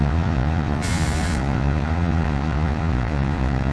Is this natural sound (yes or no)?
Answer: no